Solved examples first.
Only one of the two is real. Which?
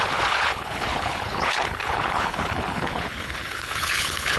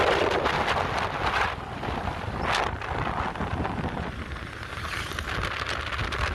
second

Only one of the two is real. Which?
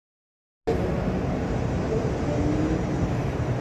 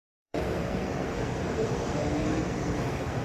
first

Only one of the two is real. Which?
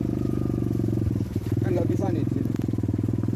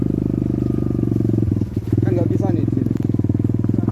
second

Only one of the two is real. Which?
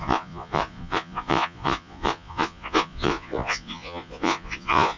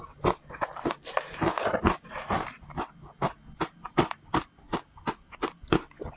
second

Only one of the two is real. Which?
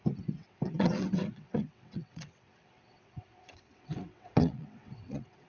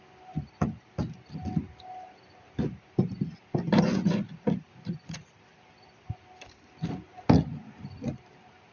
second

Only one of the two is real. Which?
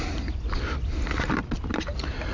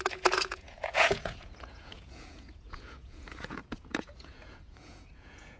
first